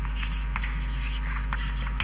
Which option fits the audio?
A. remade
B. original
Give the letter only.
B